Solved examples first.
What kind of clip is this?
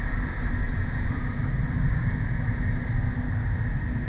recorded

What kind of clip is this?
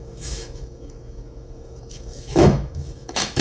remade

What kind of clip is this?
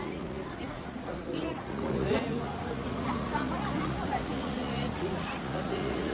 remade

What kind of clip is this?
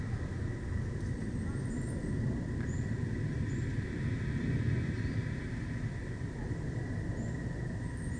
recorded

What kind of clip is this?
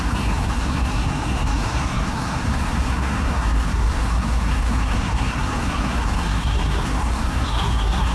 remade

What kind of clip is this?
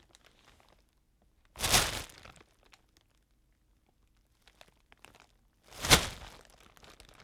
recorded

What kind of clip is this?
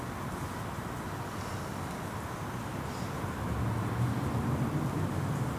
recorded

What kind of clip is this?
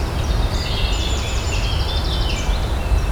recorded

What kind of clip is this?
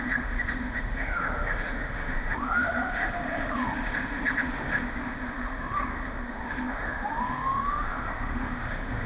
remade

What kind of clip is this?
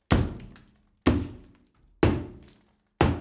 recorded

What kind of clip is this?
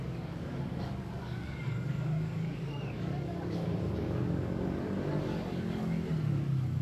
remade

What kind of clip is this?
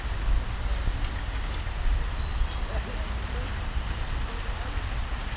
recorded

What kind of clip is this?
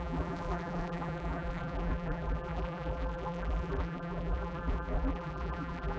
remade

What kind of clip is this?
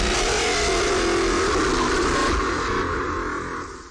recorded